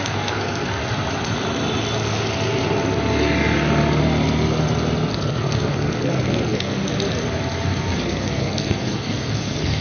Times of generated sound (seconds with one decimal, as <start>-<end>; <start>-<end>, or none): 0.0-0.8; 5.1-6.8; 8.0-9.8

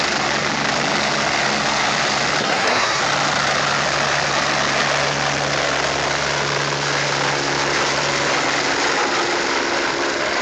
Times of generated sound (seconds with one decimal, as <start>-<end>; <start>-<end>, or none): 2.4-3.0

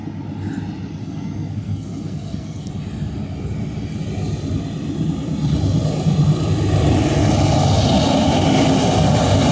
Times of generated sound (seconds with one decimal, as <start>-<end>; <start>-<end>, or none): 1.0-2.7